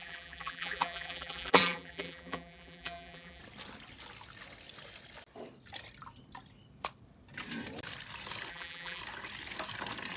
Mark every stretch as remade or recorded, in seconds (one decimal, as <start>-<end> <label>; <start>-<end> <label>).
0.0-3.4 remade; 3.4-8.5 recorded; 8.5-9.0 remade; 9.0-10.2 recorded